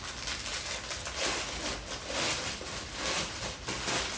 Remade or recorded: recorded